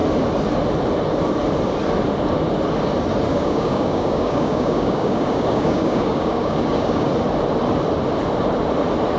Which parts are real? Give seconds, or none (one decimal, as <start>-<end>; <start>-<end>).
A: 0.0-3.3; 7.1-9.2